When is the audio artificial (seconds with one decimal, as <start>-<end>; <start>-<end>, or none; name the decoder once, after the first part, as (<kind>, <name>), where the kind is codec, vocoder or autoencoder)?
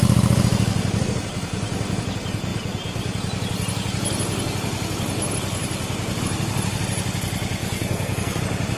7.6-8.4 (codec, SNAC)